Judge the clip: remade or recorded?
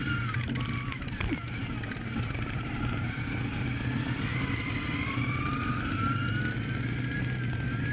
recorded